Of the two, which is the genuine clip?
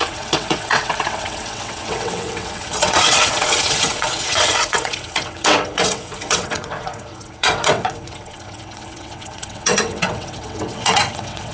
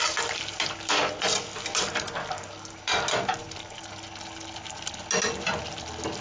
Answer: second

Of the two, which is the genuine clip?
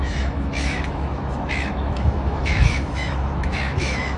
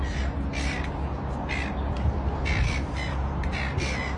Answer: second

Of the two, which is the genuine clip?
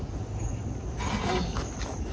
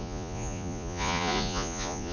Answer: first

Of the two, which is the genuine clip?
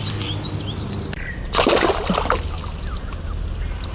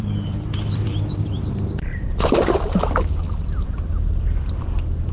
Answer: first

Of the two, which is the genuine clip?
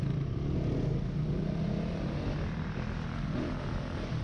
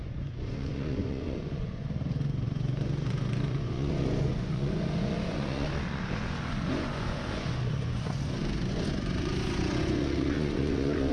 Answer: first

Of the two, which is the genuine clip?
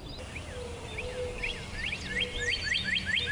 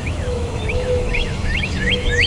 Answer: first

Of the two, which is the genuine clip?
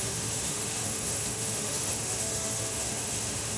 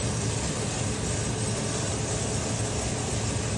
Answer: second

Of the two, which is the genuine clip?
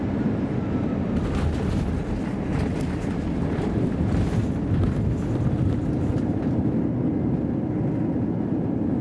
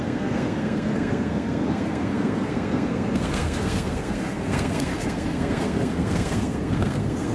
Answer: first